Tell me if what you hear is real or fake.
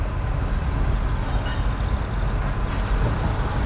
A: real